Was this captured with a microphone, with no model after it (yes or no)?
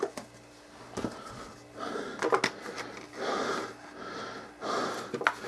yes